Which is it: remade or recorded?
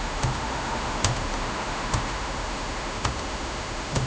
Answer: remade